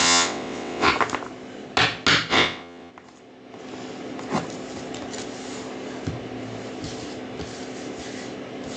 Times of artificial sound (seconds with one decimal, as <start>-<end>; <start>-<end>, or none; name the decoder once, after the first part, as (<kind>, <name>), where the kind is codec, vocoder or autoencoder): 0.0-0.9 (vocoder, WaveNeXt); 2.3-2.9